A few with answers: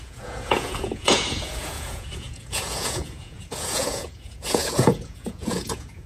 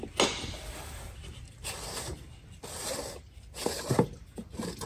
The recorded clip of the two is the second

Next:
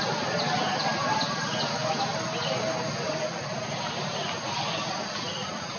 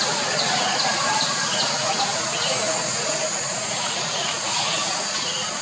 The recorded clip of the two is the first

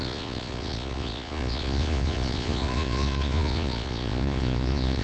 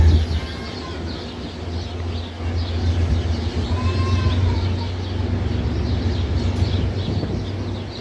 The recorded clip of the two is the second